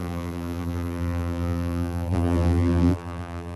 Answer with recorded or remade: remade